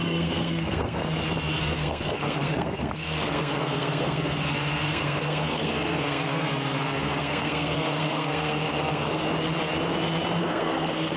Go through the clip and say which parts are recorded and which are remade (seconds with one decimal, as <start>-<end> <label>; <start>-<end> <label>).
0.0-1.0 remade; 1.0-1.6 recorded; 1.6-9.2 remade; 9.2-10.4 recorded; 10.4-11.2 remade